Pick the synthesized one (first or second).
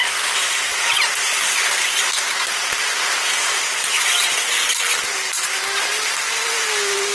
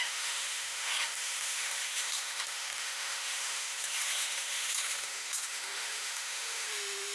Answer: second